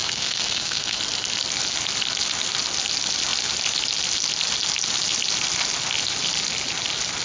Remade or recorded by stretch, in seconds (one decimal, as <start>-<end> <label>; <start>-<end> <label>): 0.0-1.0 remade; 1.0-7.2 recorded